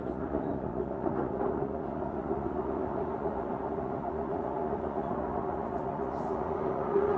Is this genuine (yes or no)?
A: no